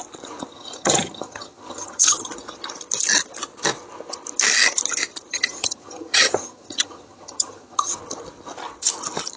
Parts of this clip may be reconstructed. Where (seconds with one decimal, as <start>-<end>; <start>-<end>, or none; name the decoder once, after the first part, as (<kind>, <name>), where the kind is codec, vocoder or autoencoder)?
0.5-2.3 (vocoder, HiFi-GAN); 5.3-7.9